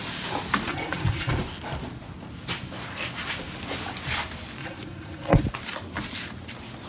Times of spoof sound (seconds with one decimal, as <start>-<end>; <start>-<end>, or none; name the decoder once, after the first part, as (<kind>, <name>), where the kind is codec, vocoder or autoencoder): 0.7-1.4 (vocoder, Vocos); 4.6-5.4

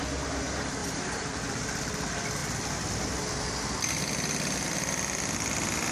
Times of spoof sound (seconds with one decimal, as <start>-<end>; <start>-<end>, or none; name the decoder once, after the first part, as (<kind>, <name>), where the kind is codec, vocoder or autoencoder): 0.8-1.3 (vocoder, BigVGAN v2)